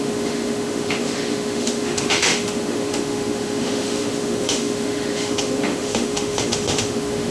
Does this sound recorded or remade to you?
remade